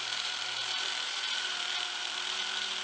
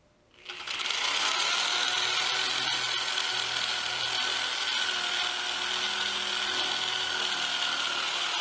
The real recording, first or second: second